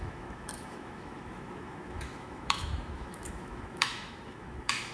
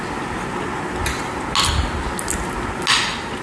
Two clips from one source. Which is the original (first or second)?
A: second